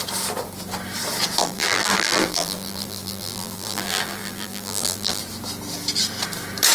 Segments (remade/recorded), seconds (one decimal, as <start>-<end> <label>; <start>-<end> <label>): 0.0-1.4 recorded; 1.4-5.2 remade; 5.2-6.7 recorded